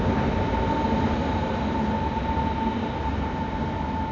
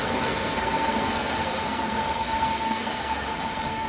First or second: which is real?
first